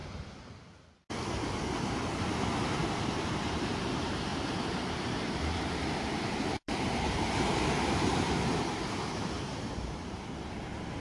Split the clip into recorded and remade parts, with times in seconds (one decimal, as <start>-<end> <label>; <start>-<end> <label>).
0.0-2.3 recorded; 2.3-11.0 remade